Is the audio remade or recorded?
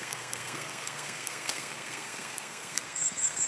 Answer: remade